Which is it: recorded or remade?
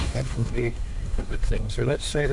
remade